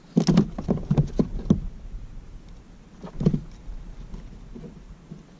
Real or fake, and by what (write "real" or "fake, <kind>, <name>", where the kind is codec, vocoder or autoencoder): real